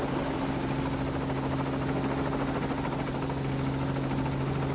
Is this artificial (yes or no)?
no